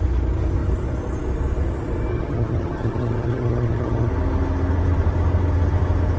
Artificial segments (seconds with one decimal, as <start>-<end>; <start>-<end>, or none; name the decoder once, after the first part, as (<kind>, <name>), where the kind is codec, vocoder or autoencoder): 2.1-4.1 (vocoder, HiFi-GAN)